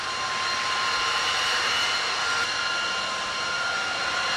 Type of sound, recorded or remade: remade